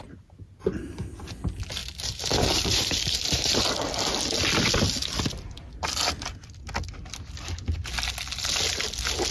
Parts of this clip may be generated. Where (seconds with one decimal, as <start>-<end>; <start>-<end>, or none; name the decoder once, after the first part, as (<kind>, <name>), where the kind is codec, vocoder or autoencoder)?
1.8-3.6 (vocoder, BigVGAN v2)